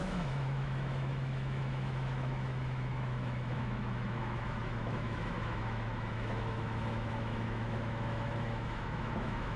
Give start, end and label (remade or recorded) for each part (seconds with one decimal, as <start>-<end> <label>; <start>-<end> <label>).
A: 0.0-9.6 remade